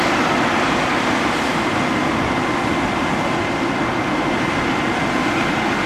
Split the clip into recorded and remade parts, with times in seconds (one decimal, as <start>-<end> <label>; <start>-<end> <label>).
0.0-5.9 recorded